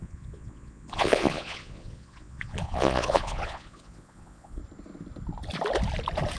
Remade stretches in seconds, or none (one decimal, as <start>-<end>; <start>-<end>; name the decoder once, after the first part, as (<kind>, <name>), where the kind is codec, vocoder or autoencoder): 0.0-4.6 (vocoder, Vocos)